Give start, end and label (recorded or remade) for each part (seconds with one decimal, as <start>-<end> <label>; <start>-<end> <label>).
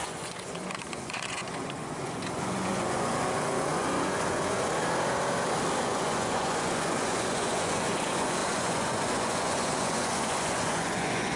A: 0.0-4.7 remade; 4.7-5.8 recorded; 5.8-11.4 remade